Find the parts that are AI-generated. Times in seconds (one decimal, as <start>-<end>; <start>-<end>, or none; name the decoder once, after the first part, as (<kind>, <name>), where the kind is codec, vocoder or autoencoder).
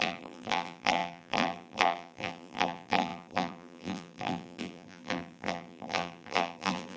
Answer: 0.0-7.0 (vocoder, BigVGAN v2)